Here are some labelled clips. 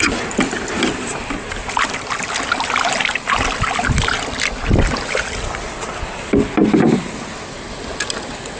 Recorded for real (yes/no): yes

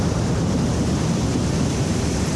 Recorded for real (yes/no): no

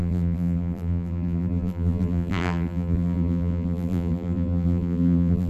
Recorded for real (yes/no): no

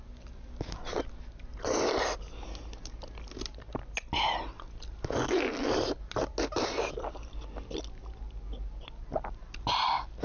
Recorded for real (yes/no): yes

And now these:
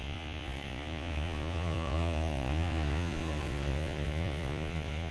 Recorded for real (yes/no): no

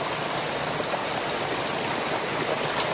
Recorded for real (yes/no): yes